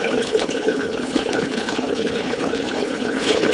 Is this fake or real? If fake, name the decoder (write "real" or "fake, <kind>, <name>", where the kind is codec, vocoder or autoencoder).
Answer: fake, codec, HILCodec